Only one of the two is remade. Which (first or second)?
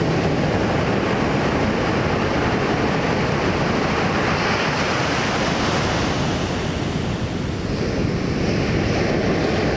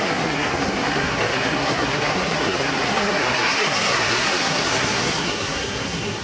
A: second